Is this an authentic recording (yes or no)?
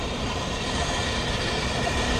no